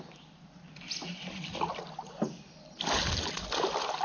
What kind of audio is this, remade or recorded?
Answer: recorded